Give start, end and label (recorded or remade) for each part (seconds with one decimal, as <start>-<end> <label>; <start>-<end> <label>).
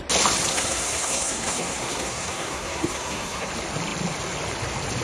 0.0-0.5 recorded; 0.5-3.5 remade; 3.5-5.0 recorded